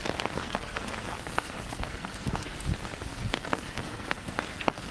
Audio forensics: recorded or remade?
remade